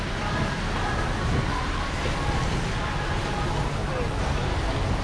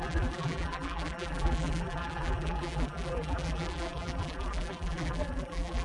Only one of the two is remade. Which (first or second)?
second